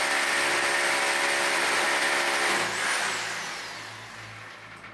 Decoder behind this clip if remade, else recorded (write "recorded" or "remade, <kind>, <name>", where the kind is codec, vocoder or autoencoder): recorded